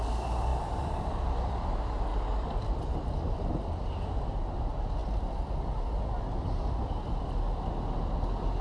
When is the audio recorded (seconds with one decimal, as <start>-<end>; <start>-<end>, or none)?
0.0-0.5; 1.2-2.1; 3.6-5.0; 5.5-8.6

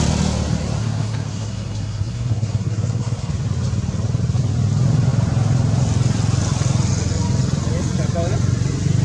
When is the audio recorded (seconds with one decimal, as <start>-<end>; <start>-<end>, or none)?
0.0-0.8; 3.3-9.0

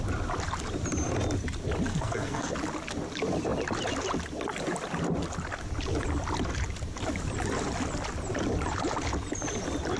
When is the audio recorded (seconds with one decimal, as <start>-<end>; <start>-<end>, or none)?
0.0-1.9; 2.5-10.0

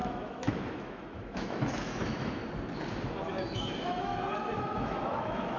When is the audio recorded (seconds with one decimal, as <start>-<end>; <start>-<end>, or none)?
2.4-3.3; 4.1-4.6

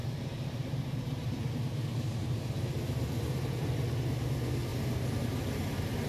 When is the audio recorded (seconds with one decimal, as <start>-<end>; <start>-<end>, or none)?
3.7-4.7; 5.6-6.1

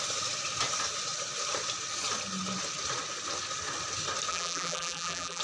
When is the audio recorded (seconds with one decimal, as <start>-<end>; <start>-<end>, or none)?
0.0-4.3

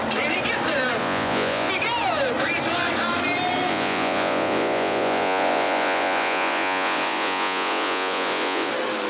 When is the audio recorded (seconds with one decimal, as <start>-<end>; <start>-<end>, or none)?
0.0-1.0; 1.7-3.7; 8.7-9.1